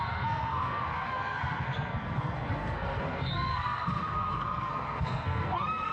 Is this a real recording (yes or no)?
no